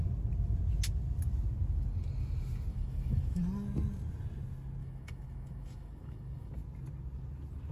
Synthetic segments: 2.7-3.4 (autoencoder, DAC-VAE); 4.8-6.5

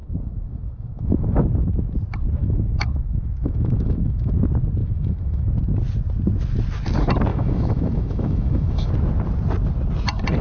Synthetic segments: 0.0-1.4 (autoencoder, DAC-VAE); 2.4-4.3; 4.8-5.5; 7.3-8.9

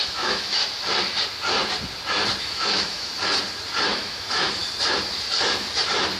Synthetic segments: 0.0-0.6 (autoencoder, DAC-VAE); 2.4-3.1; 3.9-4.6

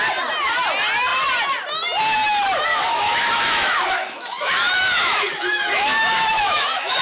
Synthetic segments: 2.7-7.0 (autoencoder, DAC-VAE)